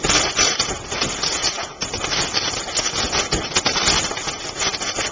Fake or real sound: real